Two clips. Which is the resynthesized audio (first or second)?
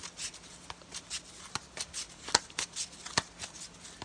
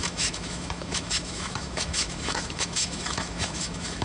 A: second